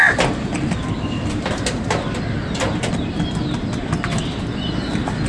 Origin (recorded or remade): recorded